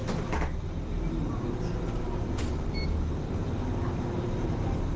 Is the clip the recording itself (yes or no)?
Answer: yes